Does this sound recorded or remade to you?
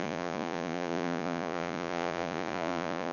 remade